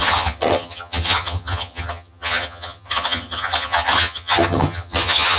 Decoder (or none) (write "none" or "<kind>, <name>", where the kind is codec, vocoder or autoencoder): vocoder, HiFi-GAN